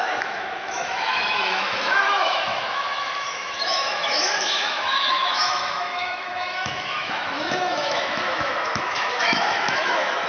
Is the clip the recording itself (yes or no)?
no